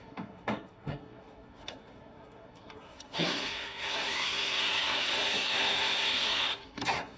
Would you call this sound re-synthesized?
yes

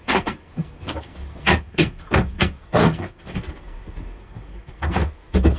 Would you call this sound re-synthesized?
yes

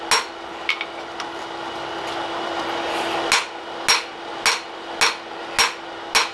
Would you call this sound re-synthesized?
no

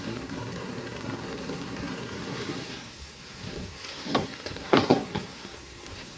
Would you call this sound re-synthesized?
yes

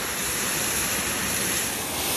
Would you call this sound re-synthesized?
no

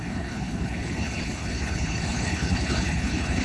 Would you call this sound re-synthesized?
yes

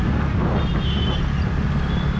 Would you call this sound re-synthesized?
no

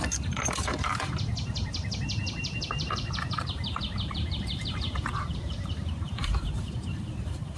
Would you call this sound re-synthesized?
yes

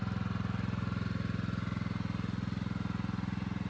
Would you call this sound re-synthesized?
no